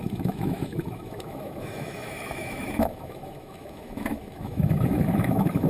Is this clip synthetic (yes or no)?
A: yes